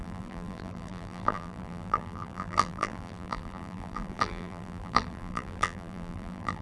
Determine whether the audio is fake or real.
fake